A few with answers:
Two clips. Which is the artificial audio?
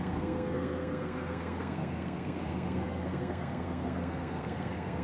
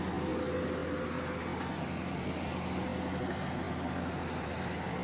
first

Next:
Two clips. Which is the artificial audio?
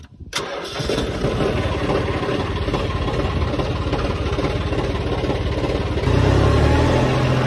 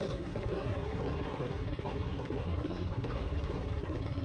second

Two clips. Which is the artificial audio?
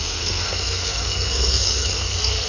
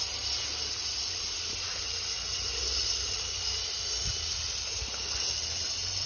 first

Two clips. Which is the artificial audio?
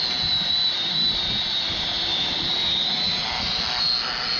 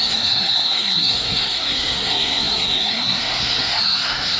second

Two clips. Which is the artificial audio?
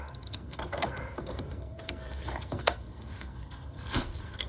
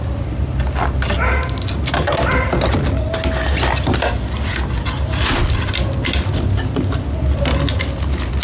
first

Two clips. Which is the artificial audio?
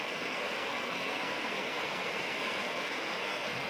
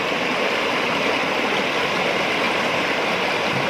first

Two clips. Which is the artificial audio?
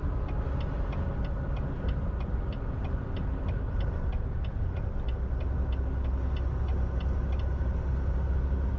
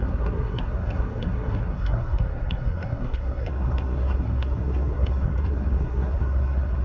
second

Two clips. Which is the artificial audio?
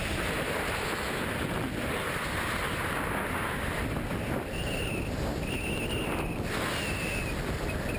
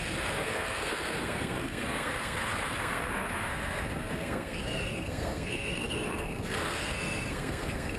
second